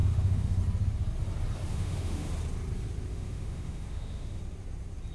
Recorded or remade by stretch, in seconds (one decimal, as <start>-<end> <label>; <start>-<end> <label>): 0.0-0.6 remade; 0.6-1.7 recorded; 1.7-2.3 remade; 2.3-3.1 recorded; 3.1-4.4 remade; 4.4-5.1 recorded